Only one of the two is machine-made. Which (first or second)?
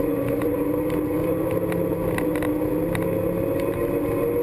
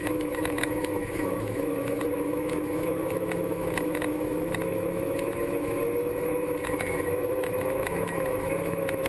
second